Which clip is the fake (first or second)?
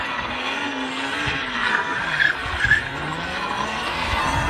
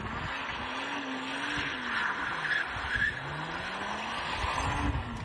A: first